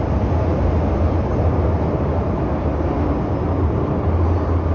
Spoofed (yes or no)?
no